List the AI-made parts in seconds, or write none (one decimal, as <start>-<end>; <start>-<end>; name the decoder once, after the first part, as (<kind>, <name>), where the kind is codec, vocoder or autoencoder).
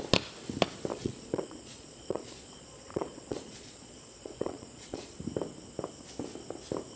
0.9-5.1 (vocoder, Vocos)